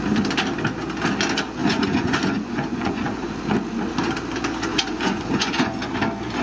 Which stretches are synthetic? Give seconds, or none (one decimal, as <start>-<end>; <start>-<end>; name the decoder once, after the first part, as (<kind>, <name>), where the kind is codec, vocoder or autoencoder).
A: 1.6-3.3 (vocoder, Vocos); 4.7-5.9